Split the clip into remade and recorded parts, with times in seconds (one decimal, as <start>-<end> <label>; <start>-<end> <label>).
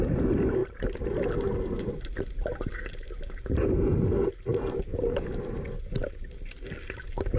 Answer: 0.0-7.4 recorded